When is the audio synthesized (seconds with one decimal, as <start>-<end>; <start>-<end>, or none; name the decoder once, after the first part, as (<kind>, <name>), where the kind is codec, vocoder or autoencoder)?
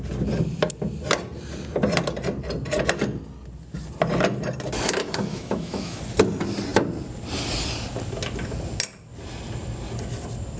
5.3-6.0 (autoencoder, DAC-VAE)